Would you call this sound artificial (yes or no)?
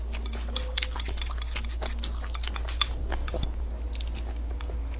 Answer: no